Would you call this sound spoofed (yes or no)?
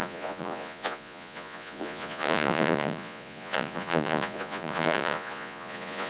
yes